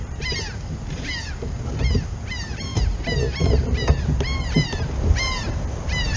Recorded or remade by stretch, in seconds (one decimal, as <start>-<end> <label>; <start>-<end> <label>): 0.0-2.7 remade; 2.7-3.4 recorded; 3.4-6.2 remade